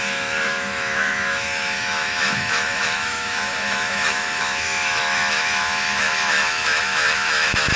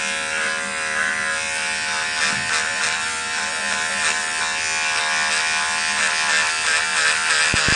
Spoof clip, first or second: first